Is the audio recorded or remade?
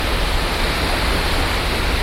recorded